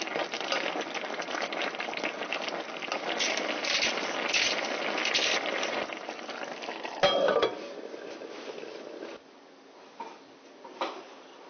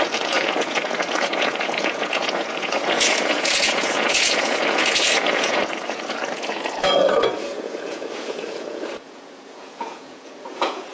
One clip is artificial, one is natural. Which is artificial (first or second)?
second